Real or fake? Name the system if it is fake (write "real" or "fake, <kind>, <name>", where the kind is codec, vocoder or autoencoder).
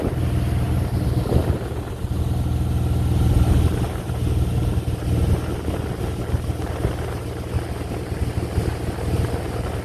real